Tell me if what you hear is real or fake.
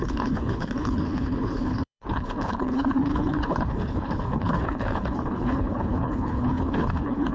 fake